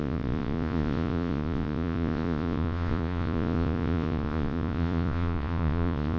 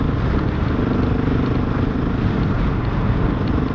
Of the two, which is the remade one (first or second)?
first